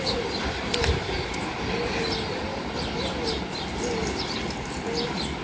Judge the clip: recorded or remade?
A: recorded